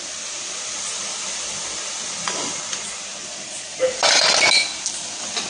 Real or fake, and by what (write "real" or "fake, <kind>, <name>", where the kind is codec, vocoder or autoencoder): real